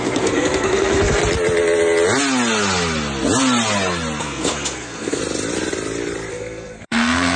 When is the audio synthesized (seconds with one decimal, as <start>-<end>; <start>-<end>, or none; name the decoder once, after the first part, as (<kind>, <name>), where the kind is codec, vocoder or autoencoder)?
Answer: 0.0-1.2 (codec, SNAC); 4.2-5.2; 6.3-7.4